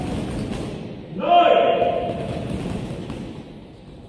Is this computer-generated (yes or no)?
no